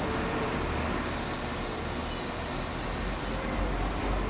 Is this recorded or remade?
recorded